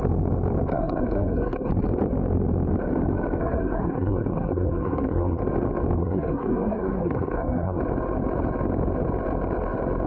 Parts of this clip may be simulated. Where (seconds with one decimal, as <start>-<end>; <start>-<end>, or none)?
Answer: 0.7-1.7; 3.4-5.4; 6.0-7.8